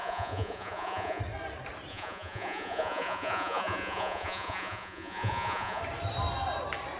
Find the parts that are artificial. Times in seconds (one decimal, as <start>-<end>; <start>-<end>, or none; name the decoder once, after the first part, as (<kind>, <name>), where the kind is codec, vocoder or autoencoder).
0.0-1.2 (vocoder, Vocos); 1.9-5.8